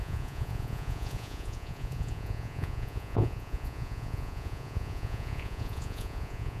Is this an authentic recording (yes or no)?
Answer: no